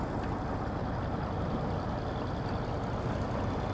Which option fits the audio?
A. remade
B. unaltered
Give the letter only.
B